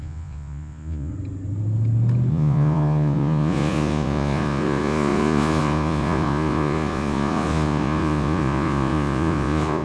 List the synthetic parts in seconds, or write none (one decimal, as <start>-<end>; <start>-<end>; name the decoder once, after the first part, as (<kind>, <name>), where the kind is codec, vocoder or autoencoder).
0.0-1.1 (vocoder, Vocos); 2.3-9.8